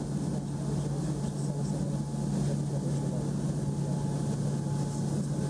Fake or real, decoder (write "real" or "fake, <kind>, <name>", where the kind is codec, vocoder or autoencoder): real